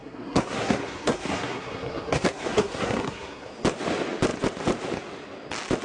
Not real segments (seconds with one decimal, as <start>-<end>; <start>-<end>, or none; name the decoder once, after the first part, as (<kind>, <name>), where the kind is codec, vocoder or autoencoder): 0.0-3.5 (codec, SNAC)